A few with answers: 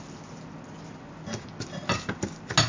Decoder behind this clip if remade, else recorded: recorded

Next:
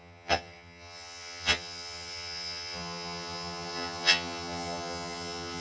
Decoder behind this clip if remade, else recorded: remade, vocoder, HiFi-GAN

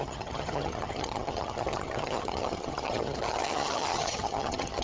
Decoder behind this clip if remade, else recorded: remade, vocoder, HiFi-GAN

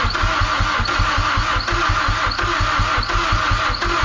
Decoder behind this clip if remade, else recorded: recorded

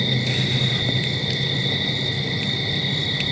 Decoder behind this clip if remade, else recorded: recorded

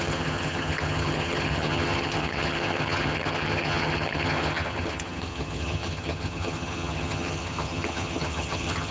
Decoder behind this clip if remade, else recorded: remade, vocoder, HiFi-GAN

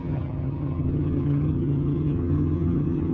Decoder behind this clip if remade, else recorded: remade, vocoder, HiFi-GAN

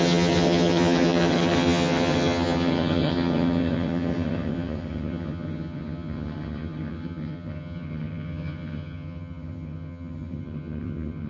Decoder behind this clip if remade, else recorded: remade, vocoder, HiFi-GAN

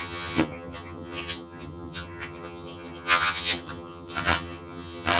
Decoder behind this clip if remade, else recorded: remade, vocoder, HiFi-GAN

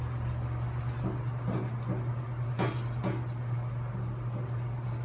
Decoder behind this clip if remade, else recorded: recorded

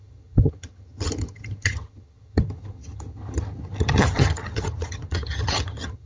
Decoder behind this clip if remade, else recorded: remade, vocoder, HiFi-GAN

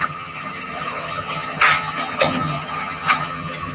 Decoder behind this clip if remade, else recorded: remade, vocoder, HiFi-GAN